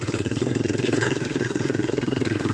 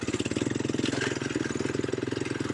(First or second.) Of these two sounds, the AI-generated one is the first